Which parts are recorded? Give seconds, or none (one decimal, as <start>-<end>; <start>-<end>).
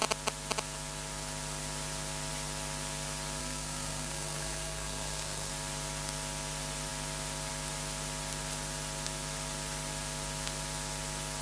0.0-3.4; 5.5-11.4